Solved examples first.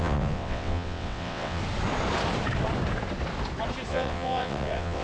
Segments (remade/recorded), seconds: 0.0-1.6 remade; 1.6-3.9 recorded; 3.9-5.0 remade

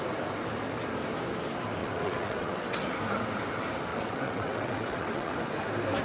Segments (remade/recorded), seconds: 0.0-1.8 recorded; 1.8-2.8 remade; 2.8-3.9 recorded; 3.9-5.3 remade; 5.3-6.0 recorded

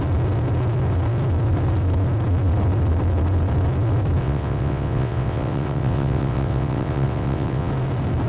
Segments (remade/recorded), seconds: 0.0-4.2 recorded; 4.2-7.7 remade; 7.7-8.3 recorded

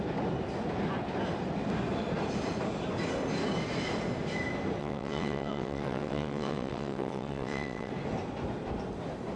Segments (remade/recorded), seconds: 0.0-4.8 recorded; 4.8-7.9 remade; 7.9-9.4 recorded

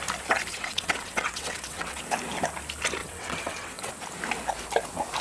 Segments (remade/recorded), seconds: 0.0-0.5 recorded; 0.5-2.0 remade; 2.0-3.0 recorded; 3.0-3.9 remade; 3.9-5.2 recorded

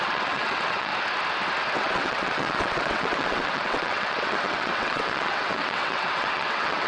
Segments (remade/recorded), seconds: 0.0-0.9 remade; 0.9-1.8 recorded; 1.8-6.9 remade

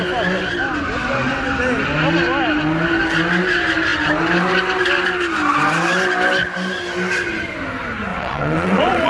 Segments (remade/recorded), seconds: 0.0-8.1 recorded; 8.1-9.1 remade

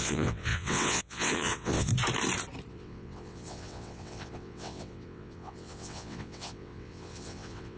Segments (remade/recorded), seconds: 0.0-1.9 remade; 1.9-2.7 recorded; 2.7-7.8 remade